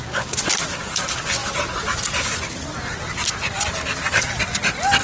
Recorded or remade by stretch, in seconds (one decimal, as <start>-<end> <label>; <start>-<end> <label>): 0.0-5.0 recorded